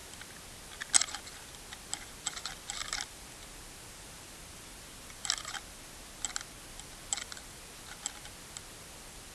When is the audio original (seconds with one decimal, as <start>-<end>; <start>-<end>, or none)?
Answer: 0.0-9.3